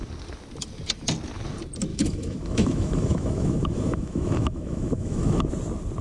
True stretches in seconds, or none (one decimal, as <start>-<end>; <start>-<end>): 0.0-1.9; 5.5-6.0